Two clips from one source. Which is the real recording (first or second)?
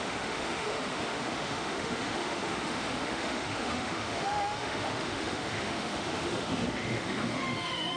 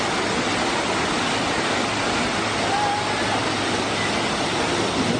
second